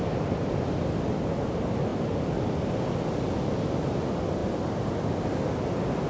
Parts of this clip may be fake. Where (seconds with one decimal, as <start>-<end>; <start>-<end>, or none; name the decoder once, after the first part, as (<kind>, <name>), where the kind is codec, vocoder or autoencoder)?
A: none